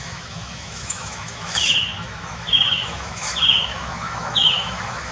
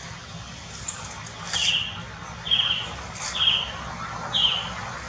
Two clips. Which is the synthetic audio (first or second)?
first